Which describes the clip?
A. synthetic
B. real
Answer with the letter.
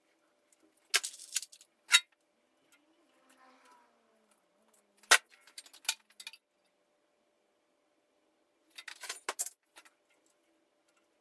B